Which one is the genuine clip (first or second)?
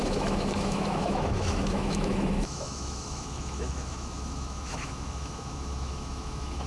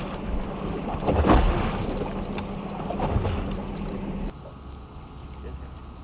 second